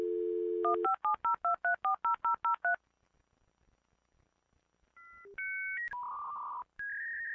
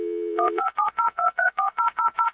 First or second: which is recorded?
first